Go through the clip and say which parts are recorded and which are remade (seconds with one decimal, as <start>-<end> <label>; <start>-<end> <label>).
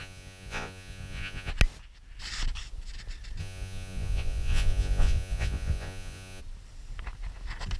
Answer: 0.0-1.5 remade; 1.5-3.4 recorded; 3.4-6.4 remade; 6.4-7.8 recorded